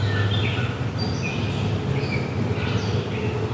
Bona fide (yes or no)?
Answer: yes